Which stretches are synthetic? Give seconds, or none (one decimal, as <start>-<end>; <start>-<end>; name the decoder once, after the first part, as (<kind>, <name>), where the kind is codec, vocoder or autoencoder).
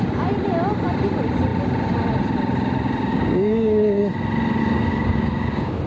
3.1-4.0 (codec, DAC); 4.6-5.9